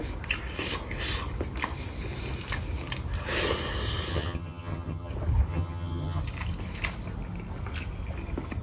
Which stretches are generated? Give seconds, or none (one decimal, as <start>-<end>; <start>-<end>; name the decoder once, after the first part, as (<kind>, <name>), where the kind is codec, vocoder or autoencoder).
4.1-5.1 (vocoder, HiFi-GAN); 5.5-6.2